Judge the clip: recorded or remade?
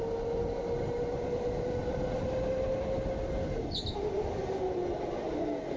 recorded